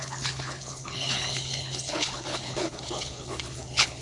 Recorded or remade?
remade